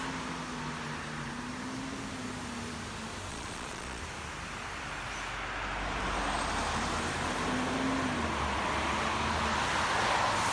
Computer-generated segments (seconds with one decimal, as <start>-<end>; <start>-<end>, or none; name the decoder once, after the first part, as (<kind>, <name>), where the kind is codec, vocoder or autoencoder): 3.3-4.0 (vocoder, Vocos)